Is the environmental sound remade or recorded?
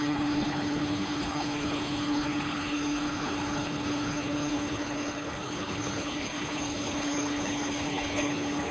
remade